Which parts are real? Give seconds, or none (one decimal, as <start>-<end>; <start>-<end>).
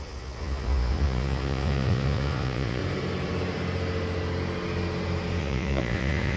2.8-5.4